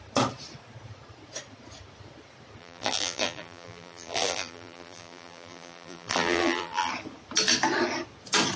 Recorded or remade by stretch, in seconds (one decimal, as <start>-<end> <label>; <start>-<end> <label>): 0.0-2.6 recorded; 2.6-6.9 remade; 6.9-8.6 recorded